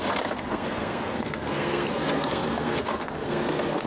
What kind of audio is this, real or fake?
fake